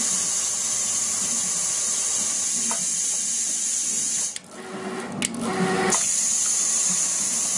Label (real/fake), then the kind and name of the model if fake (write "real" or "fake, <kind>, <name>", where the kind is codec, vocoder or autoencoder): real